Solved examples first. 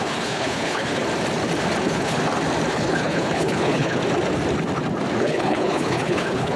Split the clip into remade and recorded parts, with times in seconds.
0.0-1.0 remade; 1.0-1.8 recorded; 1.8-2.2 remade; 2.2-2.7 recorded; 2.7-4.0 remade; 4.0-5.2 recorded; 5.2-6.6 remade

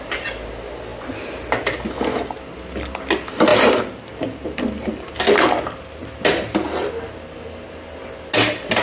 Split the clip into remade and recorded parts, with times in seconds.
0.0-3.5 recorded; 3.5-5.1 remade; 5.1-6.0 recorded; 6.0-6.6 remade; 6.6-8.8 recorded

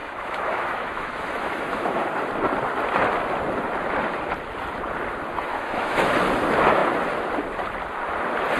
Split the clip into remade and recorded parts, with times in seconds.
0.0-2.0 remade; 2.0-5.5 recorded; 5.5-6.1 remade; 6.1-8.6 recorded

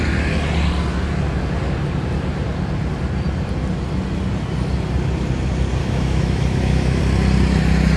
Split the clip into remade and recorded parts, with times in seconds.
0.0-5.8 recorded; 5.8-7.0 remade; 7.0-8.0 recorded